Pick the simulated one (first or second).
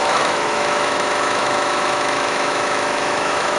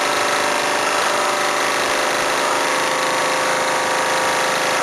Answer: first